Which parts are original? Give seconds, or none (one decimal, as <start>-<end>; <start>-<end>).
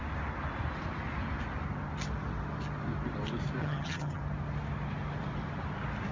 0.0-3.6; 4.2-6.1